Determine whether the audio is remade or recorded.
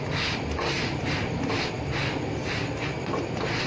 recorded